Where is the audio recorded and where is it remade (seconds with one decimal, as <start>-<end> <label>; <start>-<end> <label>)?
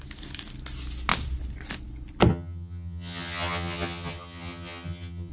0.0-2.3 recorded; 2.3-5.3 remade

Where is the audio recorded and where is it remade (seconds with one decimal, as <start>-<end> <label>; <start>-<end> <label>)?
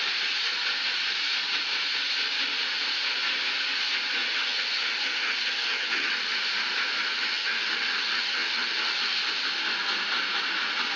0.0-4.2 recorded; 4.2-6.1 remade; 6.1-7.1 recorded; 7.1-9.2 remade; 9.2-11.0 recorded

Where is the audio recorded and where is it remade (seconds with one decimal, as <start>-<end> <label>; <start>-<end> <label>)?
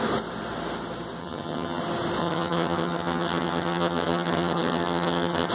0.0-1.2 recorded; 1.2-1.8 remade; 1.8-2.2 recorded; 2.2-5.5 remade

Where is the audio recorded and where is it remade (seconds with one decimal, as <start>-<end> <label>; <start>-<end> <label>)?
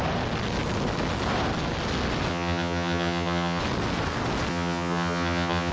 0.0-2.3 recorded; 2.3-3.6 remade; 3.6-4.5 recorded; 4.5-5.7 remade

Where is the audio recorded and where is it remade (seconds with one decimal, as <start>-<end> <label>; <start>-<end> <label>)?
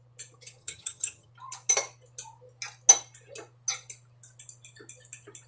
0.0-0.6 recorded; 0.6-1.3 remade; 1.3-5.5 recorded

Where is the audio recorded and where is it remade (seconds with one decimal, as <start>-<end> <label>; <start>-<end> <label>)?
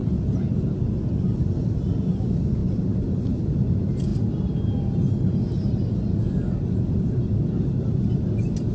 0.0-8.7 recorded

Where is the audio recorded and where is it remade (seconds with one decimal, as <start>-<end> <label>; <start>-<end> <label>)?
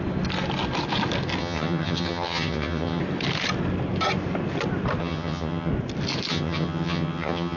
0.0-1.4 recorded; 1.4-3.0 remade; 3.0-5.0 recorded; 5.0-5.7 remade; 5.7-6.3 recorded; 6.3-7.6 remade